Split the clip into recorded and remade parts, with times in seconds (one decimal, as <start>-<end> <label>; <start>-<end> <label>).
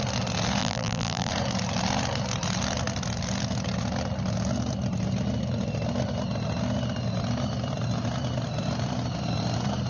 0.0-0.6 recorded; 0.6-1.3 remade; 1.3-9.9 recorded